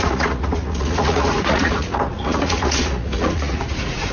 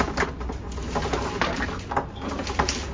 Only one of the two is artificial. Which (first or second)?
first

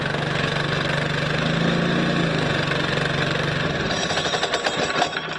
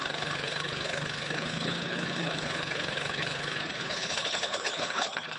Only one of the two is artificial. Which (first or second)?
second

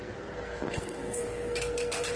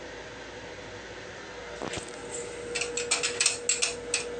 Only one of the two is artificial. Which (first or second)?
first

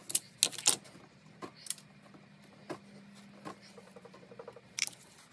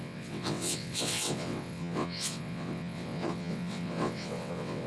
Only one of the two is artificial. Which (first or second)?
second